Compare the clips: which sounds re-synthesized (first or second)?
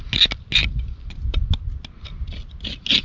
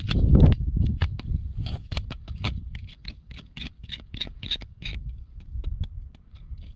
second